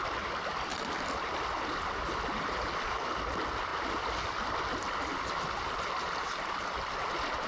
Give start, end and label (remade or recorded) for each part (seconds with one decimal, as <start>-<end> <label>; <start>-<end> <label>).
0.0-7.5 recorded